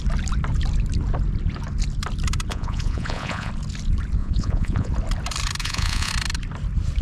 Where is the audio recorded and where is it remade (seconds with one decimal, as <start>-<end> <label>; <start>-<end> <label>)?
0.0-2.5 recorded; 2.5-3.5 remade; 3.5-4.2 recorded; 4.2-4.9 remade; 4.9-5.6 recorded; 5.6-6.1 remade; 6.1-7.0 recorded